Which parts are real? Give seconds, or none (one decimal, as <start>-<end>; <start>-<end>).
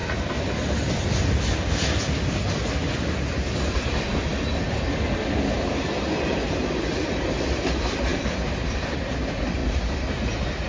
0.0-8.1; 9.0-9.6